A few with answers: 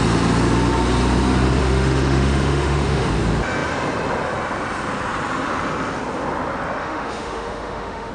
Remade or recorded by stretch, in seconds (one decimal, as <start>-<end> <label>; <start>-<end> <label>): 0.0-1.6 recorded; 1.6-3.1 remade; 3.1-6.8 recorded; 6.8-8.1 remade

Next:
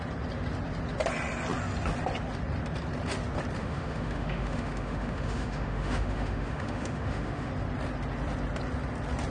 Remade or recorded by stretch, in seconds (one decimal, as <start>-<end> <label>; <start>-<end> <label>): 0.0-3.6 recorded; 3.6-7.5 remade; 7.5-9.3 recorded

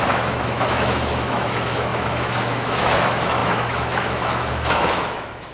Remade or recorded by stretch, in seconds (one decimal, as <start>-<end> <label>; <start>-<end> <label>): 0.0-5.5 remade

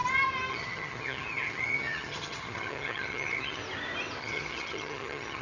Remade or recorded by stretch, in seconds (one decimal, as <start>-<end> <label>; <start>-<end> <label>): 0.0-0.5 recorded; 0.5-3.6 remade; 3.6-4.2 recorded; 4.2-5.4 remade

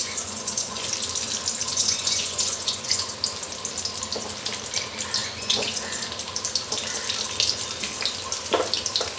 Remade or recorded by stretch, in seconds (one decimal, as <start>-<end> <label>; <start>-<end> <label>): 0.0-0.9 remade; 0.9-1.7 recorded; 1.7-3.1 remade; 3.1-5.2 recorded; 5.2-6.0 remade; 6.0-9.2 recorded